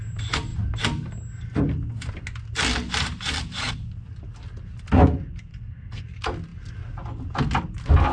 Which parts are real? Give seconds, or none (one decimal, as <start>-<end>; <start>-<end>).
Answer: 0.0-5.5; 6.0-8.1